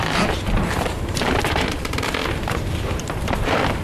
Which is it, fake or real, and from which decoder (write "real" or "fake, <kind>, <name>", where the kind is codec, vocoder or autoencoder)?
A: fake, vocoder, BigVGAN v2